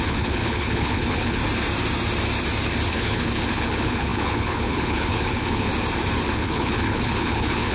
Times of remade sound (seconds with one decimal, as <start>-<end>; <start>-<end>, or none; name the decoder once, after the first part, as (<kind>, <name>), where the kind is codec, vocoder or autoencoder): 0.0-1.4 (codec, HILCodec); 2.9-5.7; 6.3-7.7